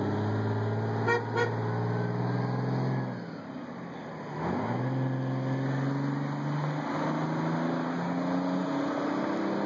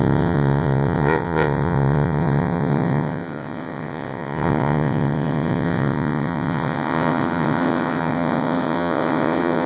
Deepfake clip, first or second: second